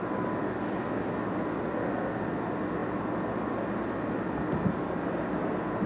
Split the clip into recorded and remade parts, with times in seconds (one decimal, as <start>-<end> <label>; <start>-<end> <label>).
0.0-5.9 recorded